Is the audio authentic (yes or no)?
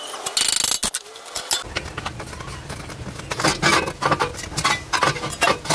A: yes